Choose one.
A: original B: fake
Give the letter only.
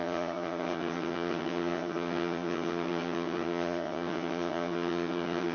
B